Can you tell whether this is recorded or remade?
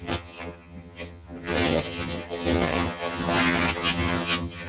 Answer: remade